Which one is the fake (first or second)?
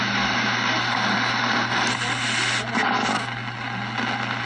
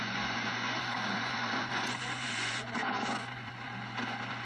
second